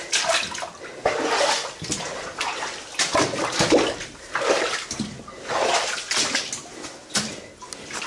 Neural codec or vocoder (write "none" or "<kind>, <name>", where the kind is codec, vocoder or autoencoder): none